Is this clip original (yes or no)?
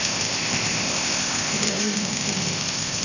no